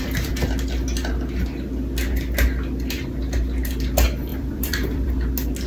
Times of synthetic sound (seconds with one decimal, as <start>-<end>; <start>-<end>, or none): 4.3-5.1